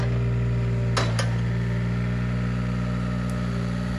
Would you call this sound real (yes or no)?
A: yes